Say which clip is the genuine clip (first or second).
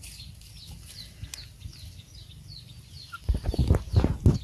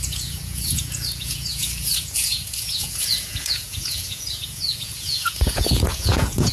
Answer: first